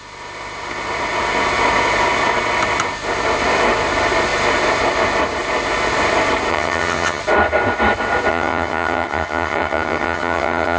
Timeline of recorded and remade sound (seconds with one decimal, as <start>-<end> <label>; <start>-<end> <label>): 0.0-6.5 recorded; 6.5-7.2 remade; 7.2-8.3 recorded; 8.3-10.8 remade